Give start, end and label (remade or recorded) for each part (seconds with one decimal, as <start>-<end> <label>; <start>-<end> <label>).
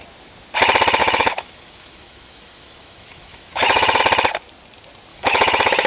0.0-1.0 recorded; 1.0-4.0 remade; 4.0-5.1 recorded; 5.1-5.9 remade